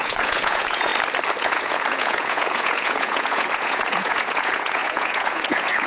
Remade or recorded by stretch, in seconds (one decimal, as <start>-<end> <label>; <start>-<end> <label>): 0.0-0.9 remade; 0.9-1.4 recorded; 1.4-5.9 remade